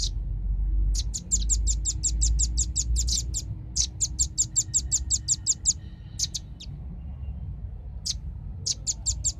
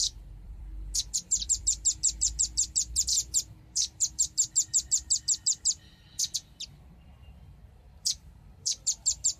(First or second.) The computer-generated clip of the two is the second